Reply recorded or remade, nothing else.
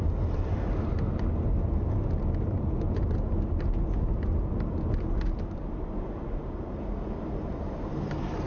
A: recorded